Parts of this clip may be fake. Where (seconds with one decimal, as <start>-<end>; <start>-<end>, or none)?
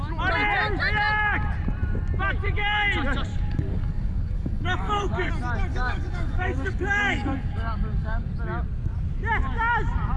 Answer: 3.3-5.3; 5.7-8.3